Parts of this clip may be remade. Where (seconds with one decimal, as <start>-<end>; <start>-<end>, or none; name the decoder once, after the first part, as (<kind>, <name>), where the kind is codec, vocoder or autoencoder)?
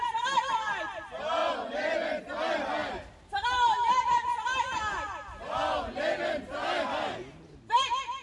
1.4-2.2 (vocoder, Vocos)